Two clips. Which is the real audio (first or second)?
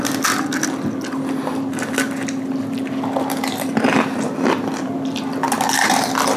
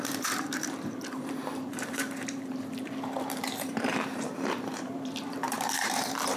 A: first